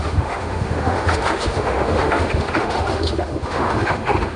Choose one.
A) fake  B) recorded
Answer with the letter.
A